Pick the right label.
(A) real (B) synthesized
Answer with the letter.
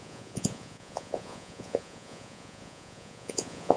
B